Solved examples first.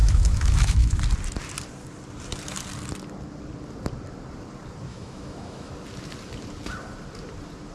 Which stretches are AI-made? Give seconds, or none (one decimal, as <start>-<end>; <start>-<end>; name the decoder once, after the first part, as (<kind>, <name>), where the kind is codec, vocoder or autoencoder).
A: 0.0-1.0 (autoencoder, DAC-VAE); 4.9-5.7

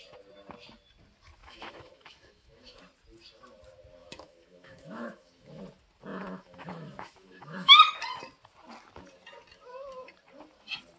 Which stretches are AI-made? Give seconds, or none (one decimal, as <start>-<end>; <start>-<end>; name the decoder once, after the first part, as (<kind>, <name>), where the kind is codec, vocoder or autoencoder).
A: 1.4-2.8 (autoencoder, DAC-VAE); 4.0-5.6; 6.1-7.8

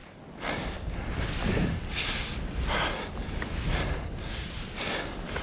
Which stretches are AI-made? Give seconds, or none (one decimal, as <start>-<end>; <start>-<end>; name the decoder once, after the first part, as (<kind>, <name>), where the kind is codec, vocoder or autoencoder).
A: none

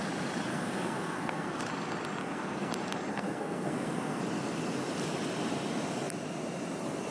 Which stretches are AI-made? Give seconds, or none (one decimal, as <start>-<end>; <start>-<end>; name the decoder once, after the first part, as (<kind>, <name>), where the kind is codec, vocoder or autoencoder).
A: 0.5-1.6 (codec, SNAC); 2.2-2.7; 3.1-4.2

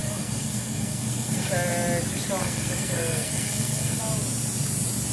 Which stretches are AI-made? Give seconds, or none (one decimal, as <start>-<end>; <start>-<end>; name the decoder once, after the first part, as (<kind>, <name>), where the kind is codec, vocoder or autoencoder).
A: 0.0-1.5 (codec, SNAC); 2.4-4.0

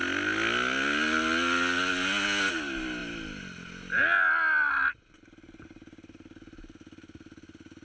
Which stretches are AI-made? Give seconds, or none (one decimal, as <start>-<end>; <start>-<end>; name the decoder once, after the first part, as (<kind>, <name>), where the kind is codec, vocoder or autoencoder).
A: none

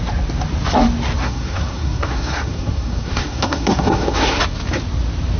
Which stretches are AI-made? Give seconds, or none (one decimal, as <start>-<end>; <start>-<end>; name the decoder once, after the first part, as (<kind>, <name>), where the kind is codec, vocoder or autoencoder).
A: 1.2-4.4 (codec, SNAC)